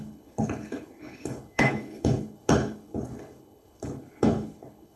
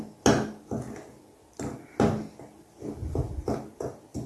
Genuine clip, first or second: second